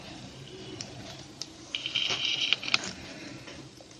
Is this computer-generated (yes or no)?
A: yes